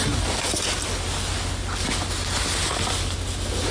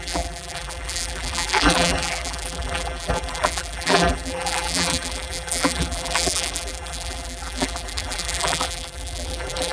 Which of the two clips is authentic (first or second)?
first